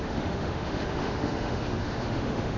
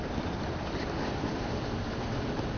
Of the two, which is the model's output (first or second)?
first